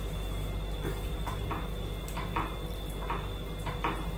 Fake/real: real